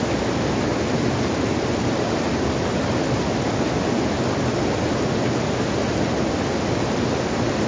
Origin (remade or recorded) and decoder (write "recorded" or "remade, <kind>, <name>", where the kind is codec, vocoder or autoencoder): recorded